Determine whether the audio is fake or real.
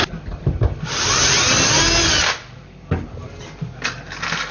real